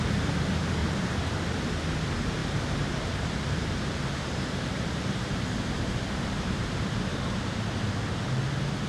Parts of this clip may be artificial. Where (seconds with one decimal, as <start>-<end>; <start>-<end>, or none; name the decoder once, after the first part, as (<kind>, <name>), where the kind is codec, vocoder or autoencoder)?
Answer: 0.8-1.4 (vocoder, BigVGAN v2); 2.4-7.5